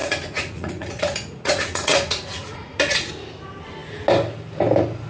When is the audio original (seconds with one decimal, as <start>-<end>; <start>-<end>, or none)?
3.1-5.1